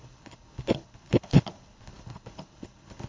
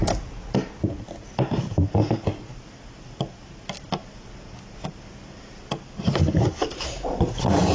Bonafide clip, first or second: second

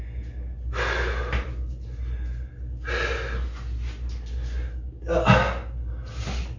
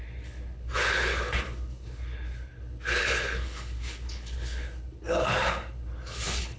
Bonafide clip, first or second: first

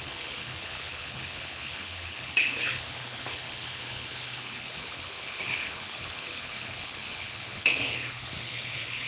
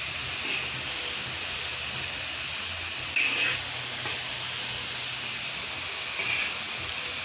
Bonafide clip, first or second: second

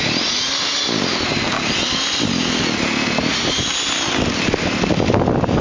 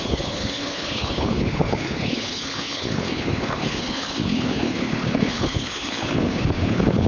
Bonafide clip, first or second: first